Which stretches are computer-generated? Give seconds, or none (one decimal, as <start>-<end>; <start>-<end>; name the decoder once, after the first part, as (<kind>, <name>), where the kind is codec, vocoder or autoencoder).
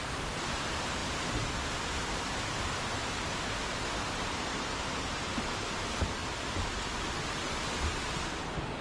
0.0-1.0 (vocoder, BigVGAN v2); 4.1-5.3; 5.8-6.2; 8.4-8.8